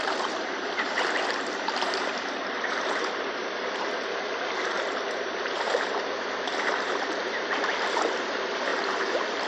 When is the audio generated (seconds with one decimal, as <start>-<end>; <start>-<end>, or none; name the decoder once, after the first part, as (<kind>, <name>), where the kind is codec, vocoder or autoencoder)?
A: 0.0-9.5 (vocoder, BigVGAN v2)

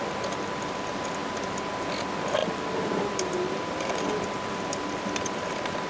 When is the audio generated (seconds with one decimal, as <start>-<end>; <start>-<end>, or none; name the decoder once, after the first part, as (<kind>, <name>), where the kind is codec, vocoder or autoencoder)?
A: 2.4-5.9 (vocoder, BigVGAN v2)